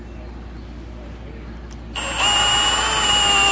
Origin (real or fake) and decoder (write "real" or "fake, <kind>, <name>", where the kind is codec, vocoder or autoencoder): real